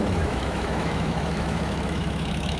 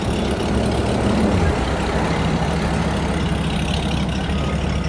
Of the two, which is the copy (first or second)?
first